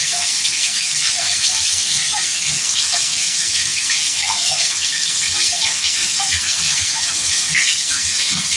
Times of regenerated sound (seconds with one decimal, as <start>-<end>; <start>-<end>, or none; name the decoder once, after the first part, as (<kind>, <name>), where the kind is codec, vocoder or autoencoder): 0.0-8.6 (codec, SNAC)